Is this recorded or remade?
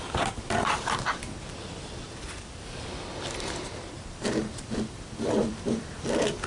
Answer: remade